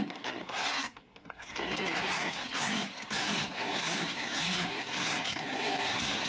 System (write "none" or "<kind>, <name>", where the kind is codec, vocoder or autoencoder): codec, SNAC